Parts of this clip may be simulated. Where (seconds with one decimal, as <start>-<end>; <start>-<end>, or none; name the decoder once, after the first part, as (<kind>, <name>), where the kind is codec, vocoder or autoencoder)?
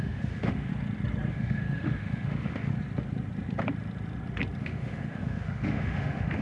0.0-0.7 (autoencoder, DAC-VAE); 1.3-2.7; 4.6-6.4